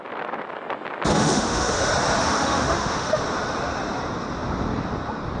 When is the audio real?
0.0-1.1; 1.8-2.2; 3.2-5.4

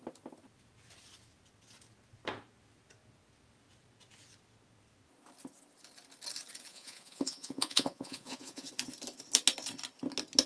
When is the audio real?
0.0-6.7; 8.7-10.5

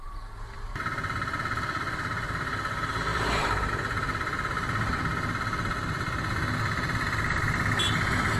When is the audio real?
0.0-3.1; 3.7-8.4

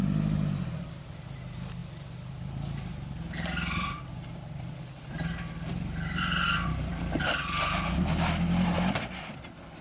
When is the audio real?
0.0-9.8

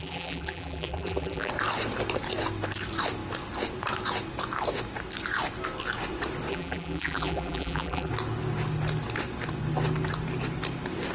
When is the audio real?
1.5-6.5; 8.1-11.1

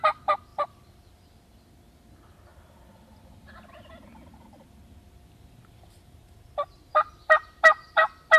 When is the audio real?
0.0-0.5; 1.1-2.5; 6.7-8.4

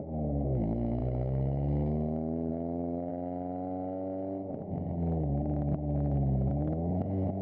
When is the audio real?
3.1-6.5